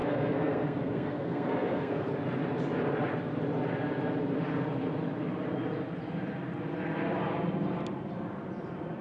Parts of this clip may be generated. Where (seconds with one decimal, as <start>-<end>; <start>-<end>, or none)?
0.0-2.1